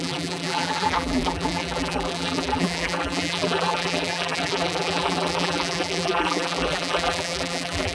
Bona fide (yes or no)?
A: no